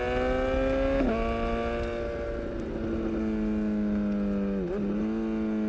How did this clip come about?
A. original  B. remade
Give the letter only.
A